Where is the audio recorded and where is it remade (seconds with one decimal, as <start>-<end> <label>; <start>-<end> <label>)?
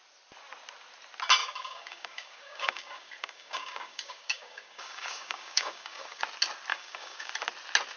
0.0-1.4 recorded; 1.4-6.2 remade; 6.2-6.7 recorded; 6.7-7.3 remade; 7.3-8.0 recorded